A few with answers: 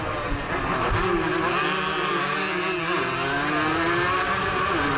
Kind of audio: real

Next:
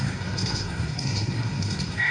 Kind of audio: fake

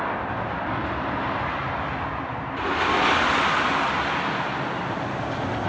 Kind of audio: real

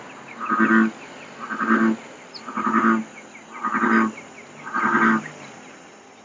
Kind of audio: real